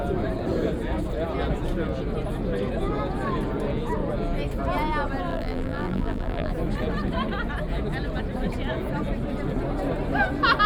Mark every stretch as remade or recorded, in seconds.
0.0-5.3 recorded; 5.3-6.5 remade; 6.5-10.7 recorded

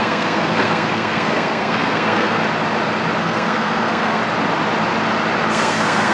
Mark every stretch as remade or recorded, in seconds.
0.0-2.4 remade; 2.4-3.2 recorded; 3.2-4.2 remade; 4.2-5.5 recorded; 5.5-6.1 remade

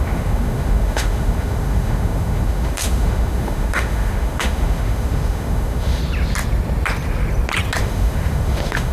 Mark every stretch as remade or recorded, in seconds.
0.0-6.0 remade; 6.0-7.8 recorded; 7.8-8.9 remade

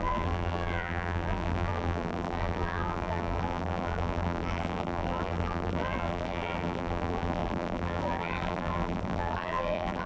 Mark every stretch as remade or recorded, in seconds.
0.0-10.1 remade

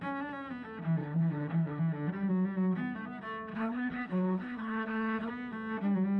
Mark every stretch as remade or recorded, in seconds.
0.0-1.0 recorded; 1.0-1.8 remade; 1.8-3.5 recorded; 3.5-5.3 remade; 5.3-6.2 recorded

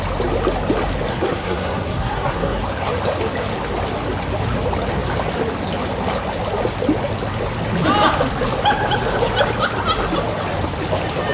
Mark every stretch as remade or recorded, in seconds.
0.0-1.1 recorded; 1.1-2.6 remade; 2.6-11.3 recorded